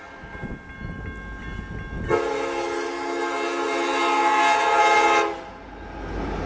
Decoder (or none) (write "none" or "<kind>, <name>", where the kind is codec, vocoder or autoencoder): none